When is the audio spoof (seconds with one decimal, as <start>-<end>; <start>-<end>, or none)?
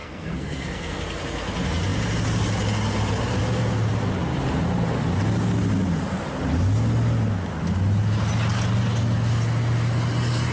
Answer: 0.0-1.0